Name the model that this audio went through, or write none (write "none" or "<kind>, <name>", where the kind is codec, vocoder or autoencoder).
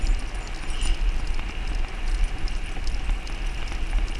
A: none